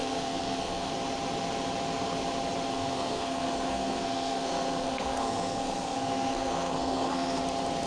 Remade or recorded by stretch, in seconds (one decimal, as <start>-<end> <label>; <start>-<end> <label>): 0.0-0.9 remade; 0.9-2.7 recorded; 2.7-7.4 remade; 7.4-7.9 recorded